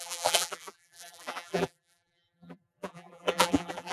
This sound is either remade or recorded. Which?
remade